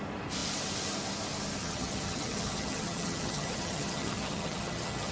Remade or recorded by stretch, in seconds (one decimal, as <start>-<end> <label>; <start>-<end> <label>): 0.0-1.6 recorded; 1.6-5.1 remade